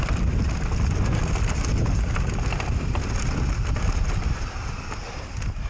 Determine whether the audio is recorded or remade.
recorded